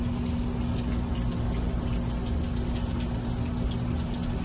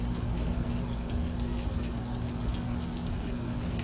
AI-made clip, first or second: second